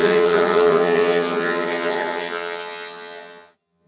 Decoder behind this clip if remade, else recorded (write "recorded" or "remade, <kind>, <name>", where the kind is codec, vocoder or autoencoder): remade, vocoder, HiFi-GAN